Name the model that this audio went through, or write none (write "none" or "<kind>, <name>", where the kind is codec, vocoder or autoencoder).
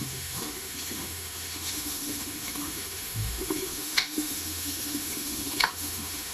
autoencoder, DAC-VAE